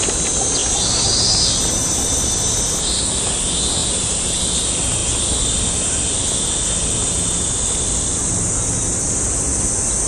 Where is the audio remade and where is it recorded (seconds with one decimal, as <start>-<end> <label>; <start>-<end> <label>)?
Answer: 0.0-3.8 recorded; 3.8-4.4 remade; 4.4-10.1 recorded

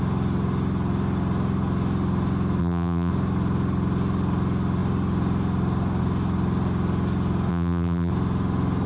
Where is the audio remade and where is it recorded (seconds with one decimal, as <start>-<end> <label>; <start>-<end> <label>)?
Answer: 0.0-2.6 recorded; 2.6-3.1 remade; 3.1-7.5 recorded; 7.5-8.1 remade; 8.1-8.9 recorded